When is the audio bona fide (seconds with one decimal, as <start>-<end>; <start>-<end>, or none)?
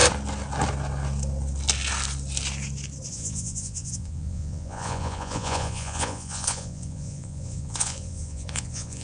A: 0.0-3.1